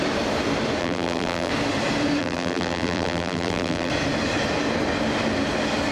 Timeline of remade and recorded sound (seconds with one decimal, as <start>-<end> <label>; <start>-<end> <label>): 0.0-0.8 recorded; 0.8-1.5 remade; 1.5-2.2 recorded; 2.2-3.9 remade; 3.9-5.9 recorded